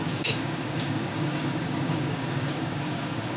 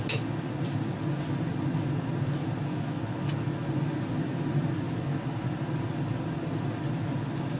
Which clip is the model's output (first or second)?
first